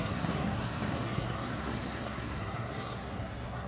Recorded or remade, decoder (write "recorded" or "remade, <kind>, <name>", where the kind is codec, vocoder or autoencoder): remade, codec, SNAC